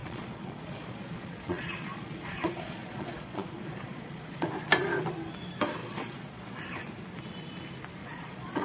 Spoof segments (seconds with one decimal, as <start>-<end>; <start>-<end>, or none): 0.0-4.5; 5.8-6.5; 8.0-8.6